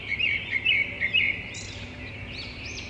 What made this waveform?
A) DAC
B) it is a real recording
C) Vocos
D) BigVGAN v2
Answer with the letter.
D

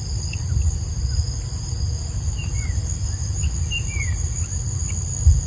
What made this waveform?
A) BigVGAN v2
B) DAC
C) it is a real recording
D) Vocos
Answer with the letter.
C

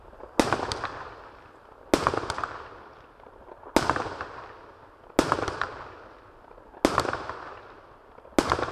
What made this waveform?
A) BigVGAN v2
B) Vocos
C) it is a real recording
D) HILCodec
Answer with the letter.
C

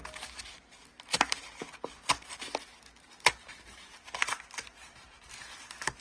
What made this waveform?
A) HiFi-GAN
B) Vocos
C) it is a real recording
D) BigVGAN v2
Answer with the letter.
C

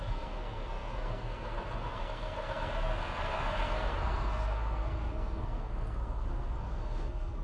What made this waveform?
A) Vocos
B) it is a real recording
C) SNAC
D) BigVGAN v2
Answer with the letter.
C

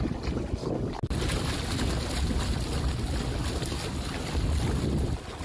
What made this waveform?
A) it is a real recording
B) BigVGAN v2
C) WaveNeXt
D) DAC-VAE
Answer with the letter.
A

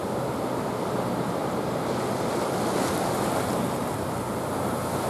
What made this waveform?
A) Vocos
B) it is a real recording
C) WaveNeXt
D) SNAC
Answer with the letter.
B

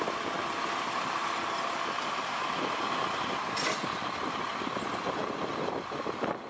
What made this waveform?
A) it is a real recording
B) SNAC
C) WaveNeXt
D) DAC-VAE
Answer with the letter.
A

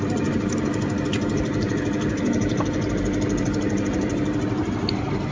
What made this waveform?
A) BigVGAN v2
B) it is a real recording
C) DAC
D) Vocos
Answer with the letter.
A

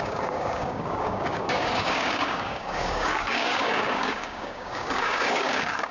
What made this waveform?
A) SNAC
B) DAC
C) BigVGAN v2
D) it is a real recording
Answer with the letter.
B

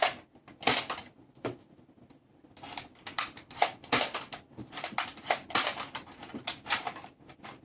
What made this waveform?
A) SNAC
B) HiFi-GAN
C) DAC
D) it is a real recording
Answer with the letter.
D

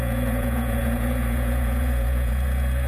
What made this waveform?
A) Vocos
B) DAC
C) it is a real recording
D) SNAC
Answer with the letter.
A